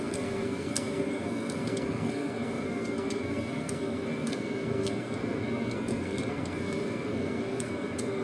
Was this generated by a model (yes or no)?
yes